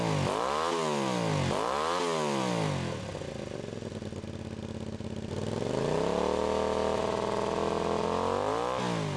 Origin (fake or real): real